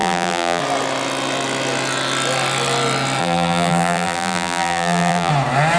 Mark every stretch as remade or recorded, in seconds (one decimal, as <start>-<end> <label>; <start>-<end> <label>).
0.0-0.6 remade; 0.6-3.2 recorded; 3.2-5.3 remade; 5.3-5.8 recorded